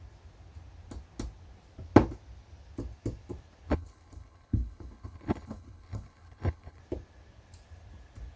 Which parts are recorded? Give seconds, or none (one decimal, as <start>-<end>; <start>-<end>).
0.0-3.7; 6.8-8.4